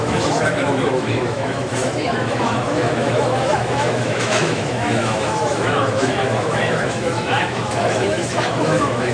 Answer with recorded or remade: remade